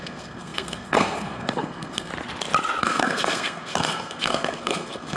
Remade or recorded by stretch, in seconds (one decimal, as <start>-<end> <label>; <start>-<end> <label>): 0.0-2.1 remade; 2.1-2.8 recorded; 2.8-5.2 remade